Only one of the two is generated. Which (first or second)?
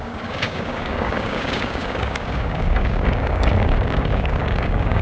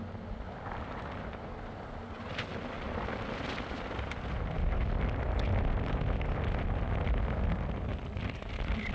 first